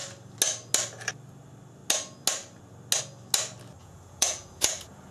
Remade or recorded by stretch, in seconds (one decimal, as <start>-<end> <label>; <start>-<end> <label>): 0.0-3.8 recorded; 3.8-5.1 remade